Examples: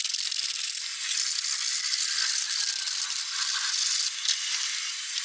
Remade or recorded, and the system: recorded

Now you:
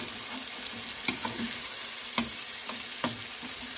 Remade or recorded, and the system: recorded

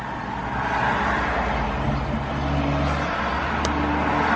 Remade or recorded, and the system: recorded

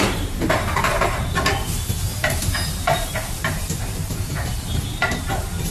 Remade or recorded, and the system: remade, vocoder, BigVGAN v2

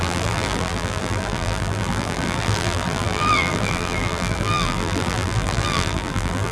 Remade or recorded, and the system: remade, vocoder, BigVGAN v2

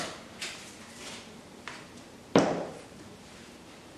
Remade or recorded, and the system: remade, vocoder, BigVGAN v2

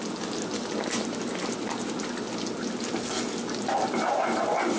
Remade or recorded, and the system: recorded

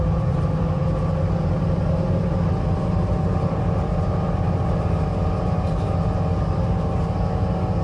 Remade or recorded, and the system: remade, vocoder, BigVGAN v2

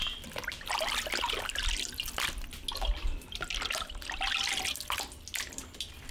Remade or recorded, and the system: recorded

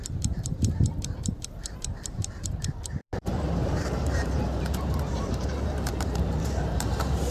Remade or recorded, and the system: remade, vocoder, BigVGAN v2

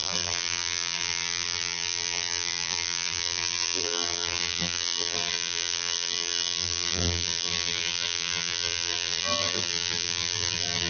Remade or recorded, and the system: remade, vocoder, BigVGAN v2